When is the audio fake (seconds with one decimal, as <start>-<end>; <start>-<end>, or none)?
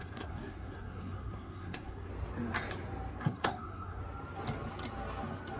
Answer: 0.0-2.1; 3.1-4.0